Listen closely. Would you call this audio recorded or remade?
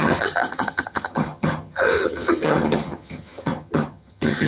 remade